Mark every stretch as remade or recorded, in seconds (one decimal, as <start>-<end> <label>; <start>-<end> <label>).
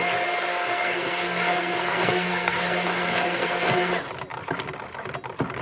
0.0-0.5 recorded; 0.5-3.9 remade; 3.9-5.6 recorded